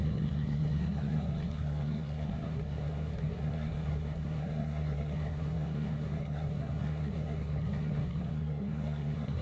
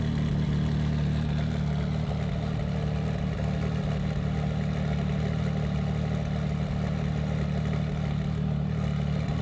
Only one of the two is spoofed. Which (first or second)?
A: first